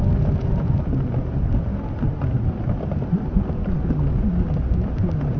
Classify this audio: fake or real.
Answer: real